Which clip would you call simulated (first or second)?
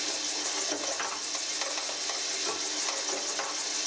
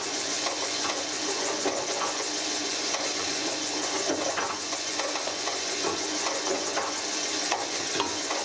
second